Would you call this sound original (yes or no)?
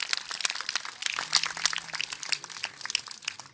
yes